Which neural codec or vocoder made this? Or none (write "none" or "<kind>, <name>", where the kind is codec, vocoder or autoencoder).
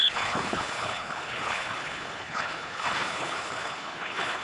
codec, HILCodec